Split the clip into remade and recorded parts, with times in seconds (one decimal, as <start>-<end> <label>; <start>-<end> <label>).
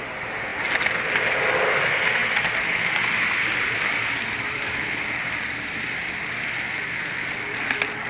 0.0-8.1 recorded